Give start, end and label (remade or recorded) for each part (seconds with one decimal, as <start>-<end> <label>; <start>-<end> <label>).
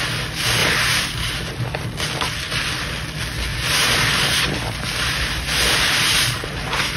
0.0-0.6 recorded; 0.6-1.8 remade; 1.8-3.5 recorded; 3.5-7.0 remade